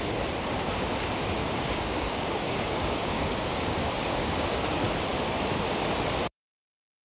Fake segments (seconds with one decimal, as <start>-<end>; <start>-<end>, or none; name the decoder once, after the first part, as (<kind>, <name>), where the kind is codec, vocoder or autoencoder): 1.4-4.5 (codec, DAC)